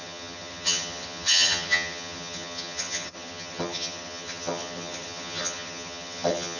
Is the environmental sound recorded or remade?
remade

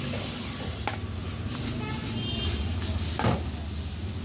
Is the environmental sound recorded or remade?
recorded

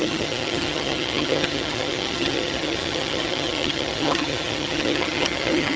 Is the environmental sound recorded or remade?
remade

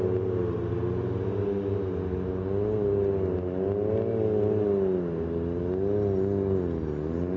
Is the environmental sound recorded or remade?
recorded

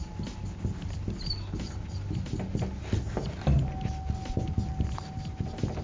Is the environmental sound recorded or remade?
recorded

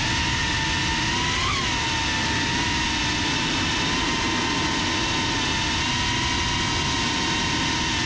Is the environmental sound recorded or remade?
recorded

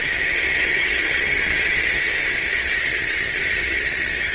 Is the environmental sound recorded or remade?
remade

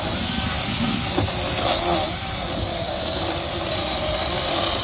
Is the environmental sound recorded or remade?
recorded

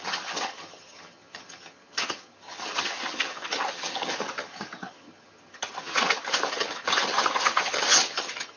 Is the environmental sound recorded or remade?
remade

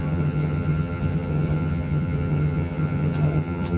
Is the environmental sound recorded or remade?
remade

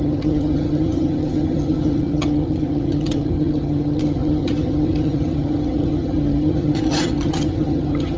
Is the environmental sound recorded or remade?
remade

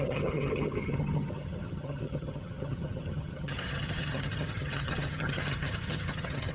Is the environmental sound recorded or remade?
remade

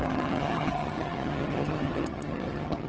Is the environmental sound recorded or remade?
remade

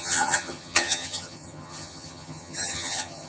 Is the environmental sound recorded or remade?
remade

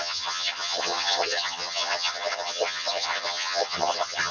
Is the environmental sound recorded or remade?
remade